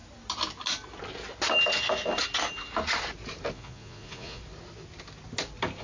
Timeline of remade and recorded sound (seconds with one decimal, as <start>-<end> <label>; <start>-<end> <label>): 0.0-3.5 recorded; 3.5-4.4 remade; 4.4-5.8 recorded